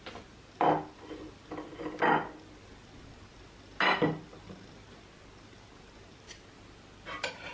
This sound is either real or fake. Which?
real